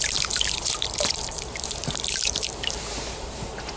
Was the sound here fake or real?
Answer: fake